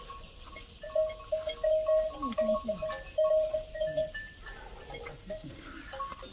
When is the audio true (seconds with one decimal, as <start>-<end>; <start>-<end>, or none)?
0.0-5.1; 5.7-6.3